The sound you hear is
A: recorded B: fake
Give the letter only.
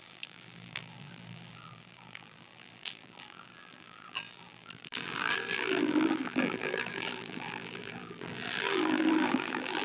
B